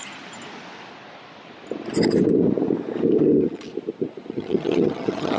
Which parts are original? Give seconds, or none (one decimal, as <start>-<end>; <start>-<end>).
0.0-3.2; 3.7-4.3